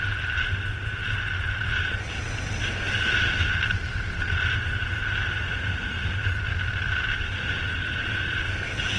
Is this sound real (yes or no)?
yes